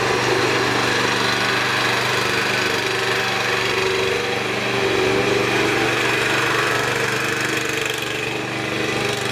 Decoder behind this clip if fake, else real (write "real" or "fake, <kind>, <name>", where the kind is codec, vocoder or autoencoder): real